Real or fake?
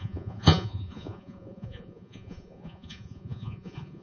fake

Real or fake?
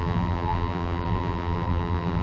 fake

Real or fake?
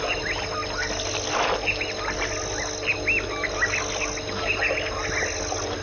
real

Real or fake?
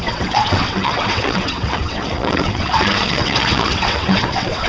fake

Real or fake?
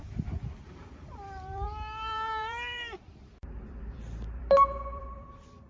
fake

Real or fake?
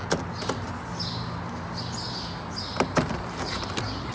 real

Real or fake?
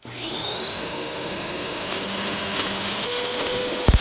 fake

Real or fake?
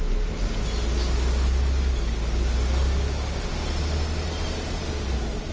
real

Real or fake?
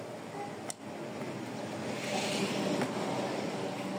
real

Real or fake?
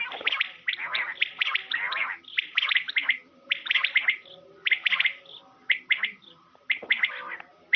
real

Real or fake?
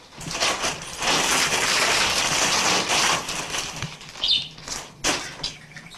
real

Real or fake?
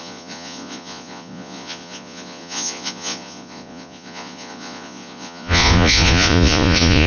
fake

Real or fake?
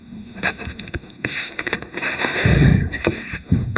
fake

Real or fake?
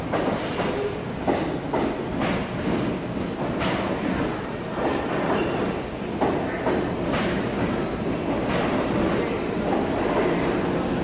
real